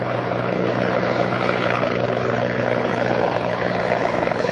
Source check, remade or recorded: remade